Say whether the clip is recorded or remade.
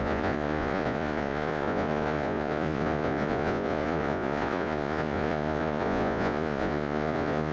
remade